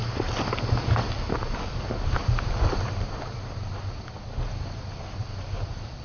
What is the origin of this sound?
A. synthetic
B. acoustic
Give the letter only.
B